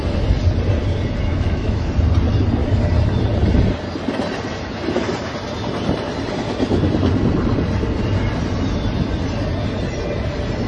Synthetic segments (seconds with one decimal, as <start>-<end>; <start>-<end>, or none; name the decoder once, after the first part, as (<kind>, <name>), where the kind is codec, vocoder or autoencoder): 1.3-1.9 (autoencoder, DAC-VAE)